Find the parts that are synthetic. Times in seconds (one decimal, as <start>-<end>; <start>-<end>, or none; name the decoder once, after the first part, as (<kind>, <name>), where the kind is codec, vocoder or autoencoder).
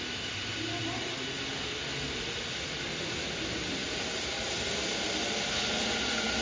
none